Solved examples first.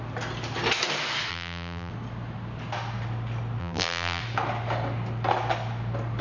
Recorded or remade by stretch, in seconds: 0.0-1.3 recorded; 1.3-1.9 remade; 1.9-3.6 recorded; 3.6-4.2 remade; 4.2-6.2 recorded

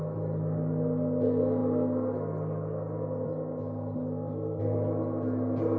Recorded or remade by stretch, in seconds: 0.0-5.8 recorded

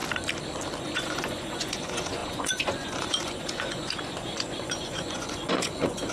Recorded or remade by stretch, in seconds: 0.0-0.8 recorded; 0.8-6.1 remade

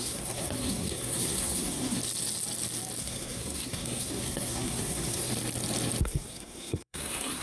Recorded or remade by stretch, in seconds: 0.0-2.0 remade; 2.0-3.0 recorded; 3.0-5.3 remade; 5.3-6.0 recorded; 6.0-7.4 remade